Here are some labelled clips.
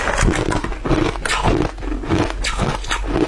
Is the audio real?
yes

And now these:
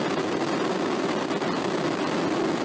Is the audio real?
yes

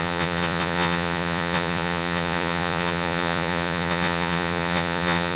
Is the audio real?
no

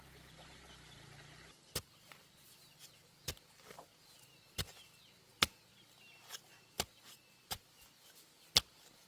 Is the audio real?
yes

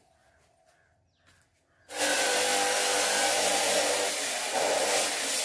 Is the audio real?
yes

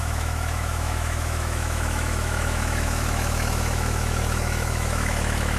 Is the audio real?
no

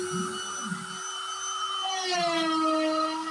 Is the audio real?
yes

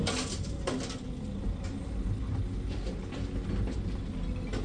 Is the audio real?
yes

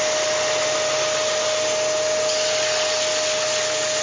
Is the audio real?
yes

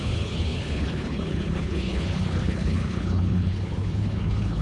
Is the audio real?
no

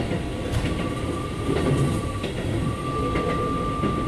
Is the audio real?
yes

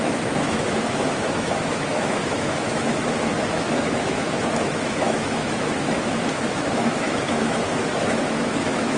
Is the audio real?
no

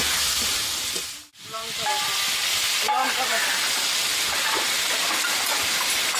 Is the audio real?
yes